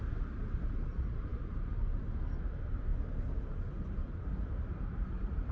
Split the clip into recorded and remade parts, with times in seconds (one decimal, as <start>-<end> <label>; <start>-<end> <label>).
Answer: 0.0-5.5 recorded